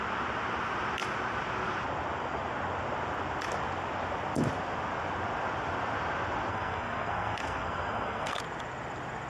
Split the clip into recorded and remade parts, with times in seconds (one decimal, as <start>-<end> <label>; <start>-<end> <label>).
0.0-6.5 recorded; 6.5-8.4 remade; 8.4-9.3 recorded